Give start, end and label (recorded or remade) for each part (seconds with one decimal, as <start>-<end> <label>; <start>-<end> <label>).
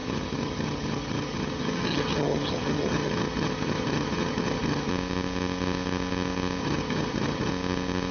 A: 0.0-4.9 remade; 4.9-6.6 recorded; 6.6-7.5 remade; 7.5-8.1 recorded